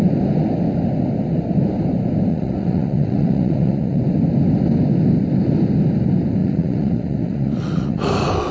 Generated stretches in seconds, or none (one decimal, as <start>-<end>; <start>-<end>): 2.3-4.0; 6.4-8.1